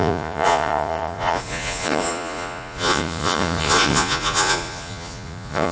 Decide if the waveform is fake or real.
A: fake